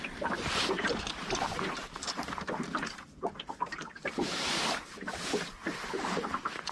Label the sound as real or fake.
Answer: fake